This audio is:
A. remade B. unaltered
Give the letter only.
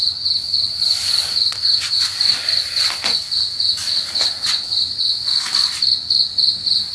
B